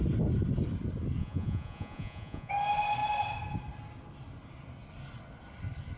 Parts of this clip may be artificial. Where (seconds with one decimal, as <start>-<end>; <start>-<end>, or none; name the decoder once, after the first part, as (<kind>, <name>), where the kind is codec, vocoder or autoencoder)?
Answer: 1.2-2.5 (vocoder, Vocos)